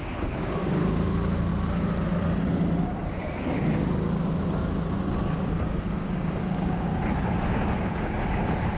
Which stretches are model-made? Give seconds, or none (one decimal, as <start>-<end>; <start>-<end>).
0.0-1.5; 2.8-4.2; 5.3-6.9; 7.5-8.8